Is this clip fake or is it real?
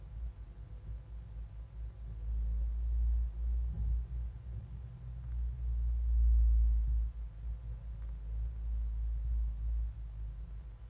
real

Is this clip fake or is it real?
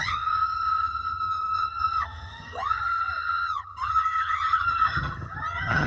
fake